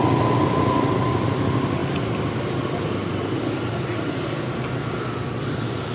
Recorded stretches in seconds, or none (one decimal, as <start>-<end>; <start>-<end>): 0.0-5.9

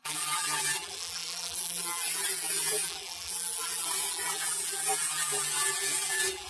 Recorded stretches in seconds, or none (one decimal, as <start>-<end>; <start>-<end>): none

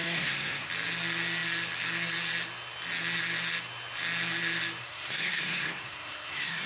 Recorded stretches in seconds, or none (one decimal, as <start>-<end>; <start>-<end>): 0.7-4.8

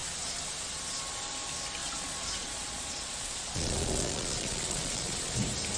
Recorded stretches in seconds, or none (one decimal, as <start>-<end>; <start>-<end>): 0.0-1.8; 5.3-5.8

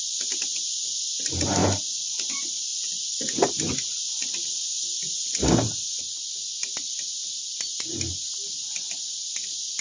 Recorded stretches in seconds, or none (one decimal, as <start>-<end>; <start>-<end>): 0.0-9.8

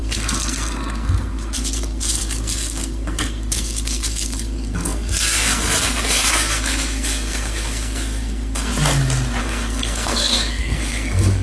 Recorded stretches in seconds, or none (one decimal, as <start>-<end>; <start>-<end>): 8.7-9.4